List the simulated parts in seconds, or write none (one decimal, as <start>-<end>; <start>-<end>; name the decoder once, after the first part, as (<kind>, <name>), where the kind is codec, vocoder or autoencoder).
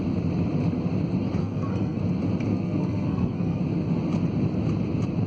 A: 1.4-2.0 (codec, SNAC); 2.5-3.6